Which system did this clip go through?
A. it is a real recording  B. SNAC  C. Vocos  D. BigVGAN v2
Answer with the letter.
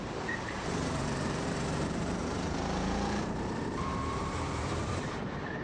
D